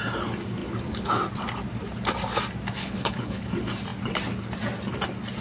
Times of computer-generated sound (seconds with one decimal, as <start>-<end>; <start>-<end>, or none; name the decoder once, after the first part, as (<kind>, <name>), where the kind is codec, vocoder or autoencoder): 2.8-3.5 (codec, HILCodec)